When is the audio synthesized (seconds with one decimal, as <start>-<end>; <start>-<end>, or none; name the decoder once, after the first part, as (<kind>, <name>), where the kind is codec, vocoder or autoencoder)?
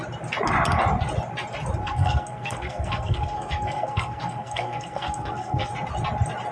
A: 1.8-5.7 (codec, SNAC)